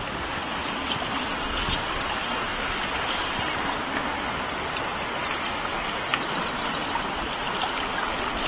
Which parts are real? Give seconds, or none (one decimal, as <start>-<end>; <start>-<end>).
0.0-2.5; 3.6-8.5